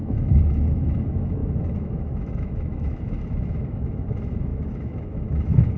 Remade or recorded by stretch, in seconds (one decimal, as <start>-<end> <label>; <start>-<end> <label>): 0.0-5.8 remade